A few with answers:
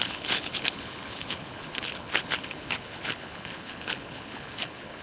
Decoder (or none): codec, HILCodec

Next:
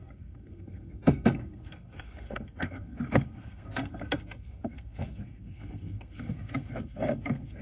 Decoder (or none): codec, SNAC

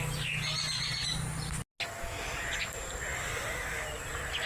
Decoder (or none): none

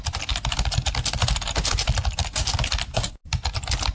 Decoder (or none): none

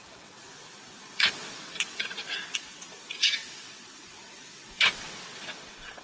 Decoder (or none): vocoder, WaveNeXt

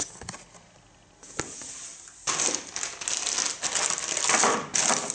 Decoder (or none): none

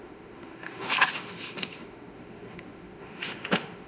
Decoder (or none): autoencoder, DAC-VAE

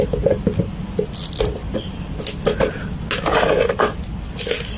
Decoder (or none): none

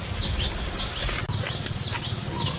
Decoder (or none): none